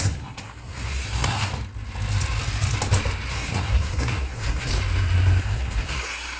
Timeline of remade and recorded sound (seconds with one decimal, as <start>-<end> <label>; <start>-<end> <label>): 0.0-1.5 remade; 1.5-3.3 recorded; 3.3-4.7 remade; 4.7-5.4 recorded; 5.4-6.4 remade